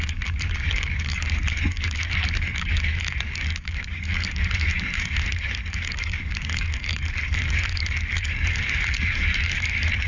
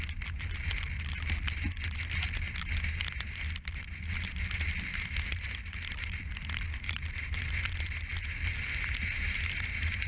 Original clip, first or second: second